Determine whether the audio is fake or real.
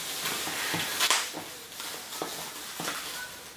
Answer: real